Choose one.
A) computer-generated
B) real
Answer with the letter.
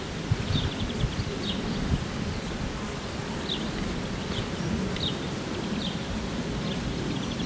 A